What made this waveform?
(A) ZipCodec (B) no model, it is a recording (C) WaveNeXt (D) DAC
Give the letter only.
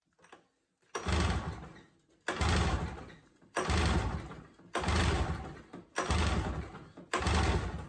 B